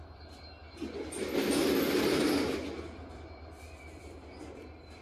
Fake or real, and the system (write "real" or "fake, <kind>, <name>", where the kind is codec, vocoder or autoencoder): real